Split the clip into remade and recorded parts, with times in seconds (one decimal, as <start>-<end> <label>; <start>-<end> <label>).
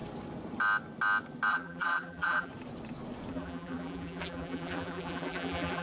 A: 0.0-1.5 recorded; 1.5-2.5 remade; 2.5-3.3 recorded; 3.3-5.8 remade